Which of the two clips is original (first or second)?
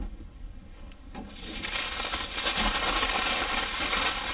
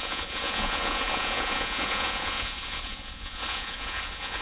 first